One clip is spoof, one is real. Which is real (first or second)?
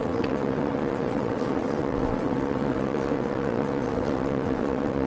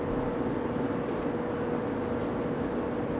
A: second